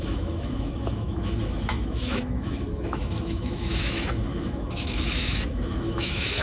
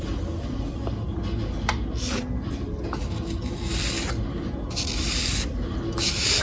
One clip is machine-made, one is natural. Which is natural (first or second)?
second